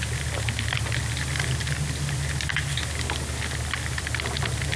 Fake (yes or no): no